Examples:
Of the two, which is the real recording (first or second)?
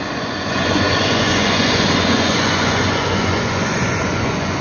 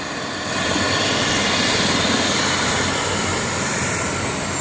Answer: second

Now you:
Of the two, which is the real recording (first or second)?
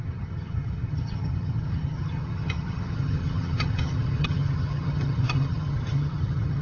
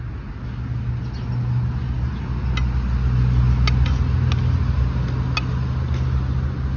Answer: second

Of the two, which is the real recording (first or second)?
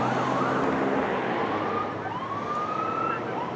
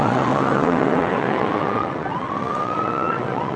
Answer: first